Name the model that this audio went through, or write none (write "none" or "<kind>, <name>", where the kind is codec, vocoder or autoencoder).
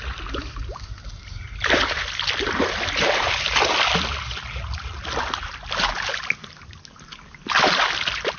none